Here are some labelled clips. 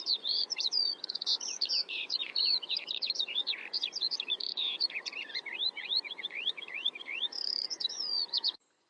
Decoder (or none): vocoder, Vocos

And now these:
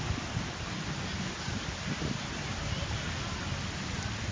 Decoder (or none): none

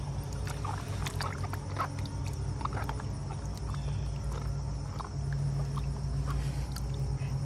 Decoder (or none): none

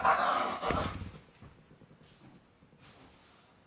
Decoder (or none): none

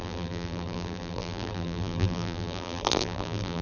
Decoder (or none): vocoder, BigVGAN v2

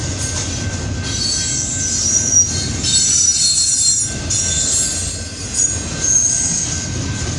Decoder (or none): none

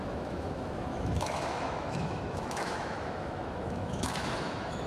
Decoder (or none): autoencoder, DAC-VAE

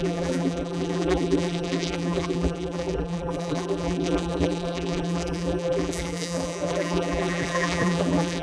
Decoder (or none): vocoder, BigVGAN v2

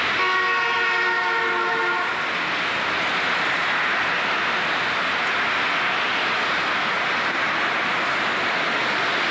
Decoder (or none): none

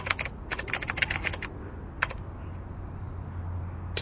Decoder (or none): none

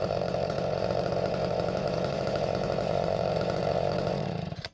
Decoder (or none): vocoder, Vocos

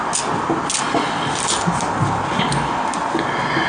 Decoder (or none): none